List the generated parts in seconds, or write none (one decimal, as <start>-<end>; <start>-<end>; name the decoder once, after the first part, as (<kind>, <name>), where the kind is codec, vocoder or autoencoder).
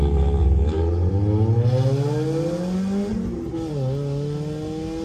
0.4-1.1 (vocoder, BigVGAN v2); 3.1-3.7